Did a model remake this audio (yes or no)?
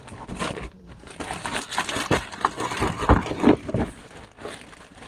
yes